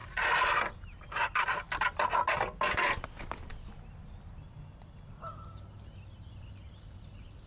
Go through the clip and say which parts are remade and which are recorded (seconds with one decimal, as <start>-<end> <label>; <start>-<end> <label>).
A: 0.0-7.5 recorded